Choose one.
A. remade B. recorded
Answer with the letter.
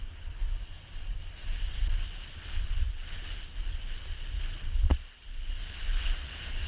B